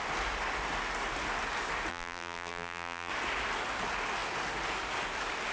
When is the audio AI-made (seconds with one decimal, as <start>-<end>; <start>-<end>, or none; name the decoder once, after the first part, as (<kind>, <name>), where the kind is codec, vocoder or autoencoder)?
1.9-3.1 (vocoder, BigVGAN v2)